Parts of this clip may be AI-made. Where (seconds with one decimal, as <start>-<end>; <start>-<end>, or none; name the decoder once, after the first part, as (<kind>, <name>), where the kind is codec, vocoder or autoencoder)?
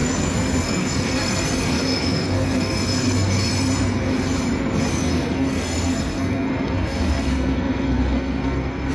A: 0.0-3.5 (codec, SNAC); 4.9-8.9